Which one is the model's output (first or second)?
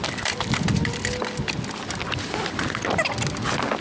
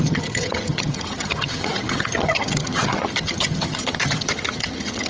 second